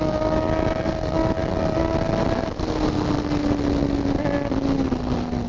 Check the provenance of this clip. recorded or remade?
recorded